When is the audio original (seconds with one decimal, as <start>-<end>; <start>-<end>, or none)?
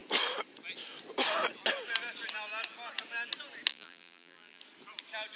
0.0-3.7; 4.6-5.4